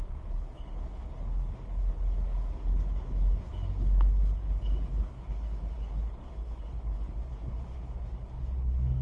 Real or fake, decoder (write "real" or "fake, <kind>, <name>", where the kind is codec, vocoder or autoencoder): fake, codec, HILCodec